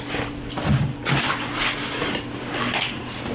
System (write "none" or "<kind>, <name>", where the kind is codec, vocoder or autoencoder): none